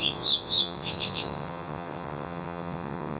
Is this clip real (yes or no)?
no